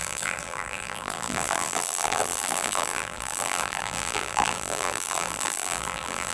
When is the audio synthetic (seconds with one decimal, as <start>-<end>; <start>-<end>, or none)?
0.0-6.3